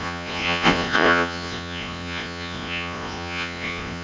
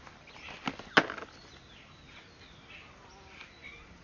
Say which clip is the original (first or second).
second